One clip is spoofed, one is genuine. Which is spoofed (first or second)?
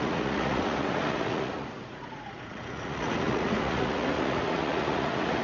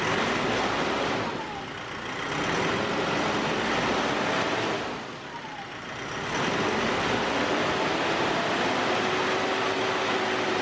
first